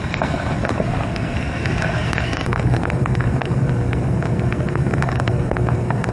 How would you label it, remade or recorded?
remade